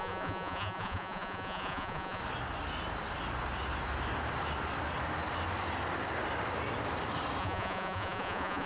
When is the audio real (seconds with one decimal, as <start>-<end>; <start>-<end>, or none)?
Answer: 2.2-7.4